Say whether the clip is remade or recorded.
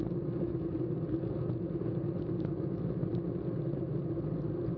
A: recorded